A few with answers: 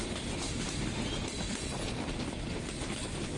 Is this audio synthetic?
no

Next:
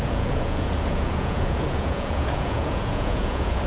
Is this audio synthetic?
yes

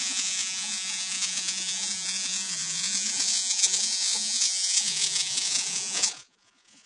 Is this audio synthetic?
yes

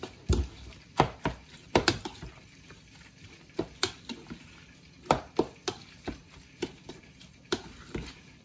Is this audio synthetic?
no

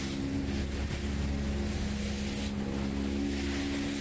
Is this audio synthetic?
no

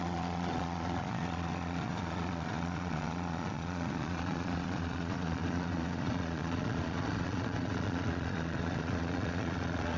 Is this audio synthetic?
yes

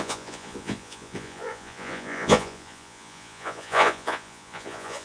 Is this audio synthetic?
yes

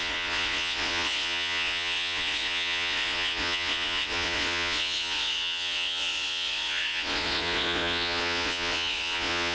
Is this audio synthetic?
yes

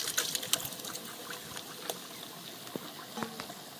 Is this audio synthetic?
no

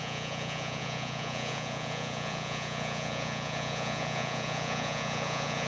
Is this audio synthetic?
yes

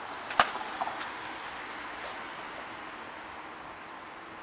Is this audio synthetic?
no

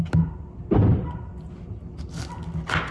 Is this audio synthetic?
no